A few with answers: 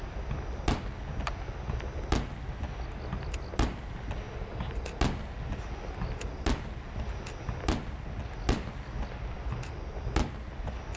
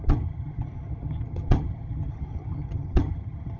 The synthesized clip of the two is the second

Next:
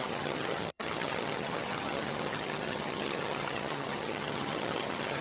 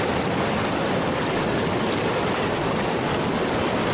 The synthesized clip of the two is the first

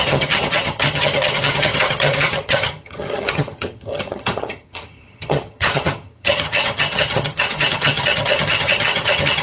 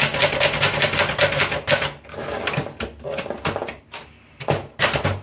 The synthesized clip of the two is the first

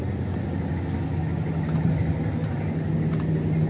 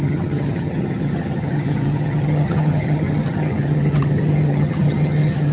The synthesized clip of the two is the second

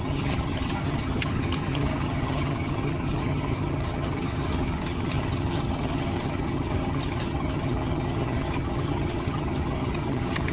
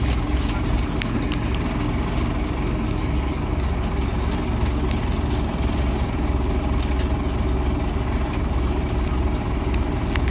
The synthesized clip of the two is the first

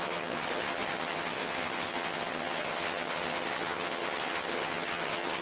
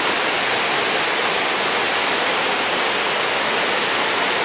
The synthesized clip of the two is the first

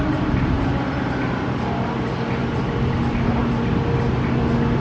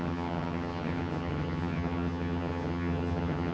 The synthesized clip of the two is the second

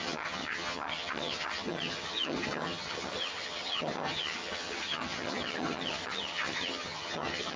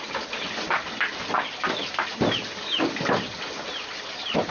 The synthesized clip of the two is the first